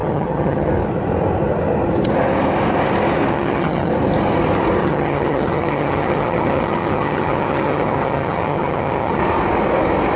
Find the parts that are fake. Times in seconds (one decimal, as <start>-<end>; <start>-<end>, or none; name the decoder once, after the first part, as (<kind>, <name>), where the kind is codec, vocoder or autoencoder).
0.0-0.7 (vocoder, HiFi-GAN); 3.3-3.9; 4.8-9.2